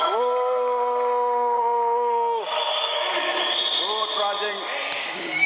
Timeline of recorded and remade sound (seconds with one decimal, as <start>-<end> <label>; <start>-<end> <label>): 0.0-3.3 remade; 3.3-4.8 recorded; 4.8-5.5 remade